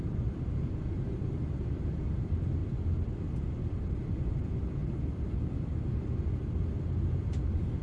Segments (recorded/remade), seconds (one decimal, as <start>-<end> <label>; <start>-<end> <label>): 0.0-4.8 remade; 4.8-5.9 recorded; 5.9-7.8 remade